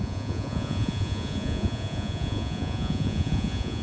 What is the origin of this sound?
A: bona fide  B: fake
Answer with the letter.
B